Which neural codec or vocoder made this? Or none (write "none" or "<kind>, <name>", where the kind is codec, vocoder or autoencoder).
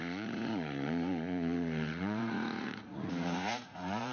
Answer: vocoder, Vocos